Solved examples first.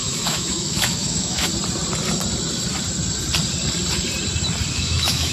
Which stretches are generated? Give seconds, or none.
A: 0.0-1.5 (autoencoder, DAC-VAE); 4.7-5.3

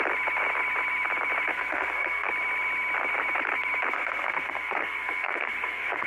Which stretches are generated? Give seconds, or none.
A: 1.5-2.3 (codec, SNAC); 3.9-6.1